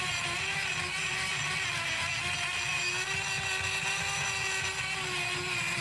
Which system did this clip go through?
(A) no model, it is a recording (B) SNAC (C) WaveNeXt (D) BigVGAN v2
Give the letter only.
A